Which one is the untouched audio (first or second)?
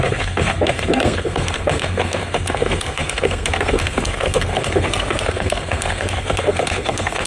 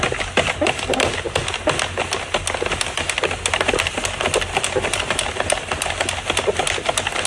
second